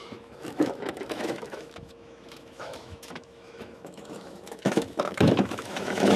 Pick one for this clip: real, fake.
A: fake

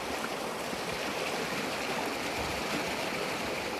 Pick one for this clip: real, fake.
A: real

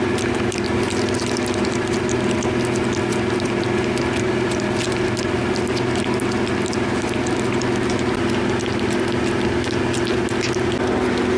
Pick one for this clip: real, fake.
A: real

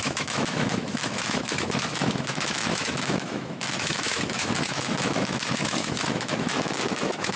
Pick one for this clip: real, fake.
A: fake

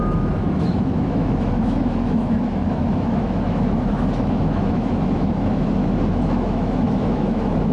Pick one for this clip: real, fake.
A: fake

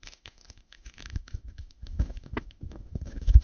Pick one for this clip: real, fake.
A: fake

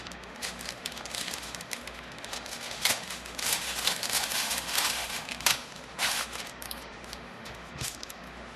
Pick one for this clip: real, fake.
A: fake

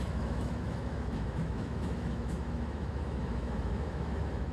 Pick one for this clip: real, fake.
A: fake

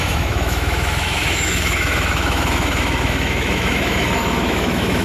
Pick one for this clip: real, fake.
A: fake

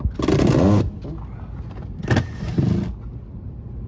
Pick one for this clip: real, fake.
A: real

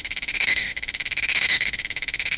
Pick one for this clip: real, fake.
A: fake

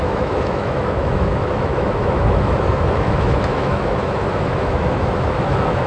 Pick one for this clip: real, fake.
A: fake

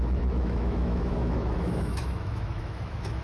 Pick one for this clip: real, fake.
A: fake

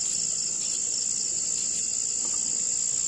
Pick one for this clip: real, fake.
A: real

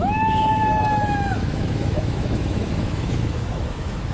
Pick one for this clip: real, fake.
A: fake